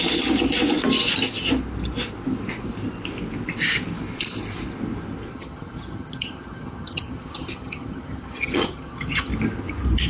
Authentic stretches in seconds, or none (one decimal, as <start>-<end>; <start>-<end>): 0.0-5.3; 9.3-10.1